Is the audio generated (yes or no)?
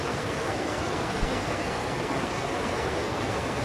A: yes